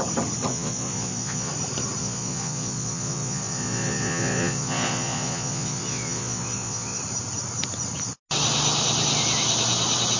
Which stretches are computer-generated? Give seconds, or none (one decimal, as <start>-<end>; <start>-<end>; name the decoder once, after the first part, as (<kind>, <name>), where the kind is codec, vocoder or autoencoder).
0.5-1.5 (vocoder, Vocos); 2.0-7.0